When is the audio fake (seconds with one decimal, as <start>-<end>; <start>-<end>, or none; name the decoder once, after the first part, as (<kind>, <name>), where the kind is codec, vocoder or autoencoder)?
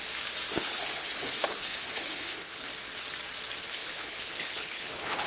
0.5-2.7 (codec, HILCodec); 3.6-5.3